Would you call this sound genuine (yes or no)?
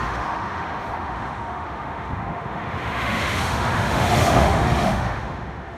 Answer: no